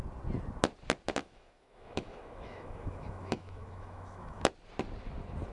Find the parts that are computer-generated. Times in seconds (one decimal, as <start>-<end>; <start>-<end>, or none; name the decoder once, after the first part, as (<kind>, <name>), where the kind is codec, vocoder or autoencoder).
1.2-4.5 (autoencoder, DAC-VAE)